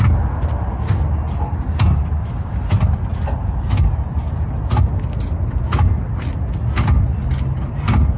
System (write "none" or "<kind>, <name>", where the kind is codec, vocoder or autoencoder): none